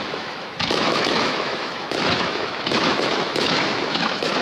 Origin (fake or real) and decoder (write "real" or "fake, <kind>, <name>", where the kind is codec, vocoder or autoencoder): fake, autoencoder, DAC-VAE